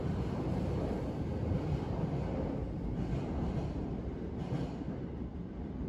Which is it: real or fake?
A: real